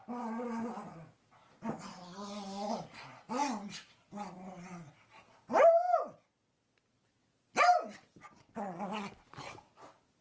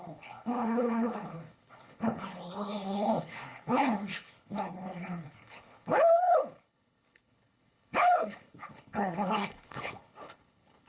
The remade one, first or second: second